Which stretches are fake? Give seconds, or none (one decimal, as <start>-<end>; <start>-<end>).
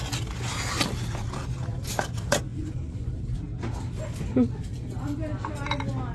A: 2.5-3.3